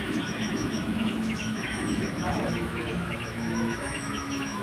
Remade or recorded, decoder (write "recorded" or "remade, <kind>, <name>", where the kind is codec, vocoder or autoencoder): remade, autoencoder, DAC-VAE